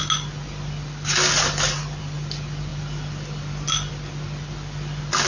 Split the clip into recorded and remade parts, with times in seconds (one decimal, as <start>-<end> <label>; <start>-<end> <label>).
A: 0.0-5.3 recorded